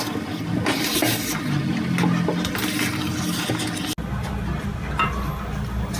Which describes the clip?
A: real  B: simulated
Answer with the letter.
A